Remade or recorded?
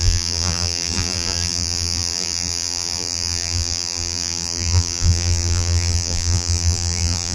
remade